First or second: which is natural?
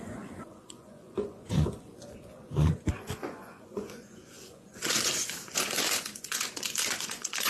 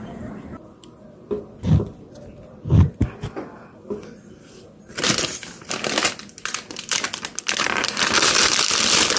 second